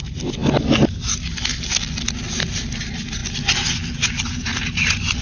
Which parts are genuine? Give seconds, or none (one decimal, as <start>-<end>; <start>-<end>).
0.0-5.2

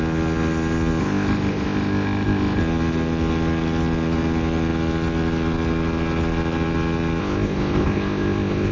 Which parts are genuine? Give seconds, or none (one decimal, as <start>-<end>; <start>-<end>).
0.0-1.0; 2.6-7.2

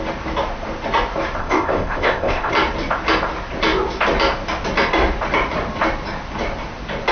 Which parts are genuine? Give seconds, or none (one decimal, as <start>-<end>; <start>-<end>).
0.0-1.4; 2.5-7.1

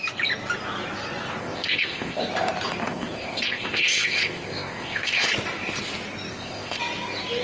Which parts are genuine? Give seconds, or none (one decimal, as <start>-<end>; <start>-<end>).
0.0-1.4; 2.2-2.8; 5.3-6.3; 6.8-7.4

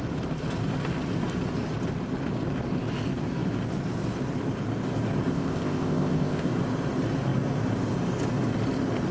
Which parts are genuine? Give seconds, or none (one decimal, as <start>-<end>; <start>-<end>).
0.0-5.3; 6.5-9.1

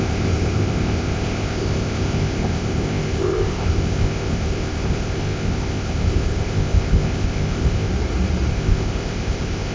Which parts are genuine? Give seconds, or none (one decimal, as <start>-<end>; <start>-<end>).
7.9-8.5

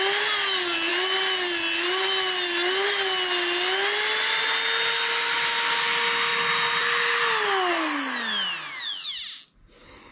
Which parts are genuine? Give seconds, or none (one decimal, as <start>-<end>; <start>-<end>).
0.0-10.1

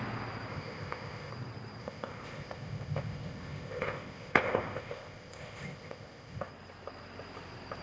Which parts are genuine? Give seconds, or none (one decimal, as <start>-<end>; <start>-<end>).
0.0-0.5; 1.3-1.8; 6.5-7.8